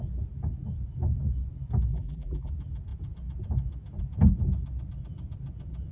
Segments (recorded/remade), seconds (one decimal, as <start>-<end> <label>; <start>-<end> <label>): 0.0-1.9 recorded; 1.9-2.5 remade; 2.5-5.9 recorded